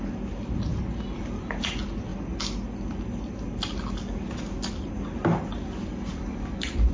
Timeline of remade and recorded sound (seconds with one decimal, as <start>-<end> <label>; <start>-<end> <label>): 0.0-6.9 recorded